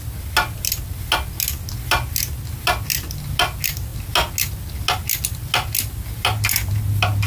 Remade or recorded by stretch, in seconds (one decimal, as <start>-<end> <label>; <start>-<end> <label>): 0.0-7.3 recorded